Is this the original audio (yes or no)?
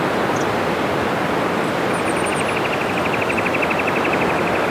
yes